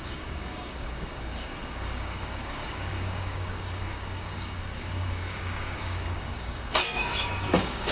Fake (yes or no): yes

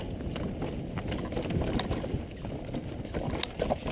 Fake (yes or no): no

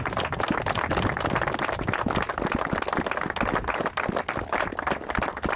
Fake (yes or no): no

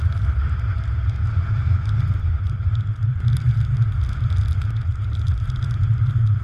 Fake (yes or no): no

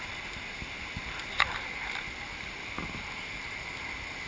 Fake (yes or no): no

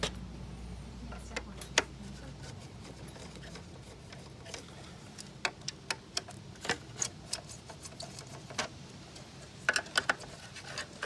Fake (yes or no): no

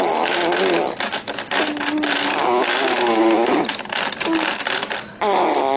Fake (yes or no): no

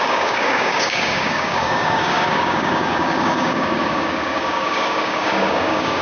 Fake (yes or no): yes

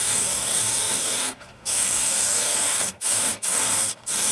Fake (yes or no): yes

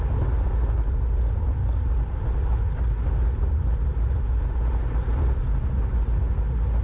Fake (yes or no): no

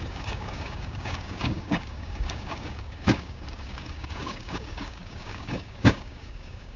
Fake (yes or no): yes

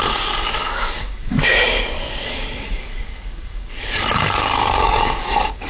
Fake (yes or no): yes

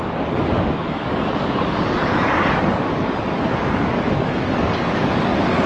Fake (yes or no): yes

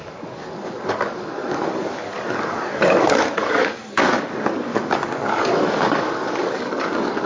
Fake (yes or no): yes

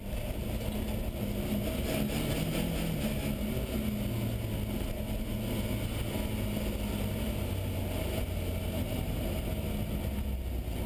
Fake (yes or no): no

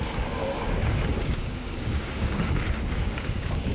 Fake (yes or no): yes